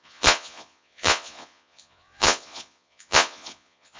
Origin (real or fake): fake